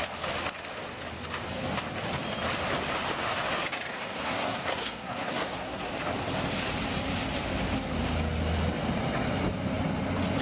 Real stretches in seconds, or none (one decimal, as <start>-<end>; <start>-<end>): 0.0-3.9; 5.9-10.4